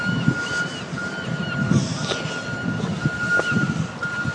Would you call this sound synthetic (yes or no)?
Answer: no